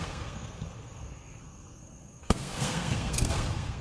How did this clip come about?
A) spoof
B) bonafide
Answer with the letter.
A